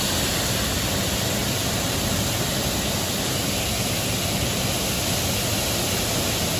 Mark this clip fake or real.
real